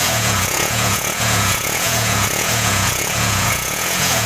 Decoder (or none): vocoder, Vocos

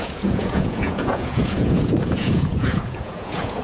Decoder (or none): vocoder, Vocos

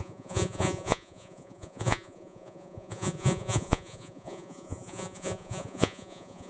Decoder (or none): vocoder, Vocos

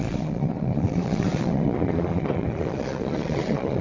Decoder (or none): vocoder, Vocos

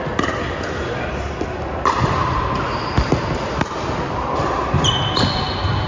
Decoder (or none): none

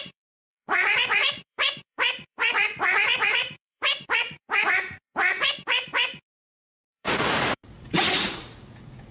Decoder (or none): vocoder, Vocos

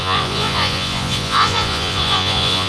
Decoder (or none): vocoder, Vocos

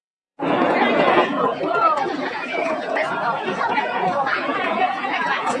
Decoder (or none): vocoder, Vocos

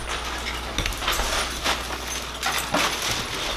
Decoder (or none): none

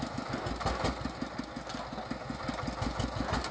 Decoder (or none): none